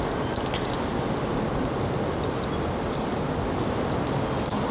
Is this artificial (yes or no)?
no